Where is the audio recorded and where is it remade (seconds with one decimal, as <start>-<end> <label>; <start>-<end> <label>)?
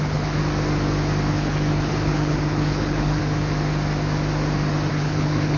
0.0-0.4 remade; 0.4-1.3 recorded; 1.3-3.2 remade; 3.2-4.9 recorded; 4.9-5.6 remade